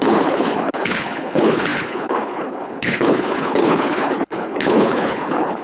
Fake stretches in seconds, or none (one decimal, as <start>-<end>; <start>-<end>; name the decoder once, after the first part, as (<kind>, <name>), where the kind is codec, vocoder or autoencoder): 0.0-5.6 (codec, HILCodec)